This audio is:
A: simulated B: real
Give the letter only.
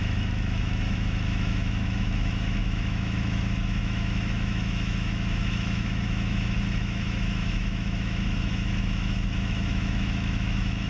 A